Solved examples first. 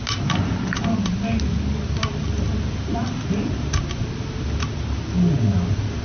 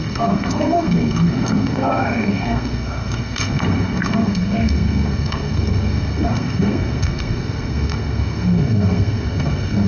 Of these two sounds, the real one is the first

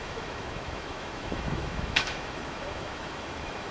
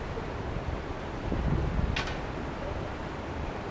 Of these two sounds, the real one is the second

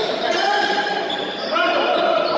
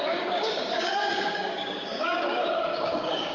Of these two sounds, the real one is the first